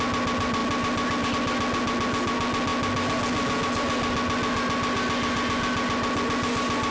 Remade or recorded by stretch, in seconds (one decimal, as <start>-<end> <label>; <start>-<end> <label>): 0.0-6.9 recorded